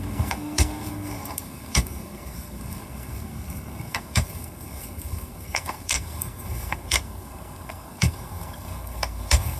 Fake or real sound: fake